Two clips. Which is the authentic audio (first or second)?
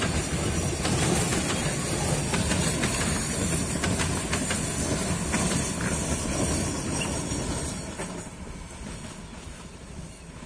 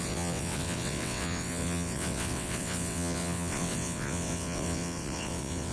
first